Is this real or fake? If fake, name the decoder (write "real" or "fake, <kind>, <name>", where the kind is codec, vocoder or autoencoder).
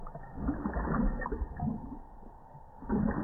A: real